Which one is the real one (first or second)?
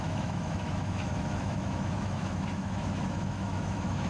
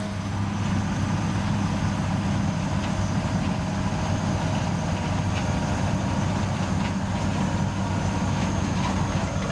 second